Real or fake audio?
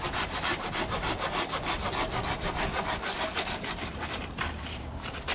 real